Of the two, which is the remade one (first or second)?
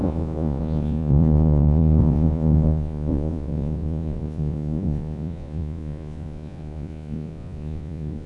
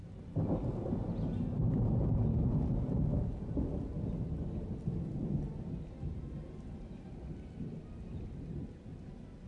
first